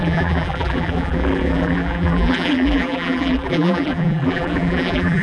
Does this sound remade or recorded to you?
remade